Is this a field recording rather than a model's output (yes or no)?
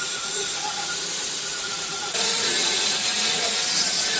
no